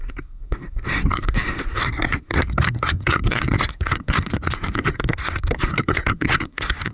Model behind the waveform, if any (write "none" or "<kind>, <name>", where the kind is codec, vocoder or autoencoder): codec, SNAC